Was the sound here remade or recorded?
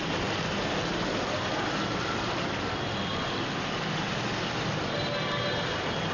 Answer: recorded